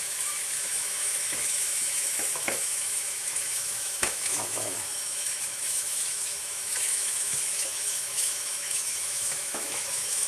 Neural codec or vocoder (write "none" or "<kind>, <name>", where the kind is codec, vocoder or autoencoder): autoencoder, DAC-VAE